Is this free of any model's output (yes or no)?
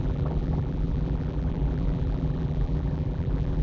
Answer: no